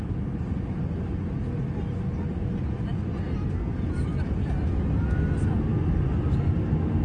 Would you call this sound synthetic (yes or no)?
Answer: no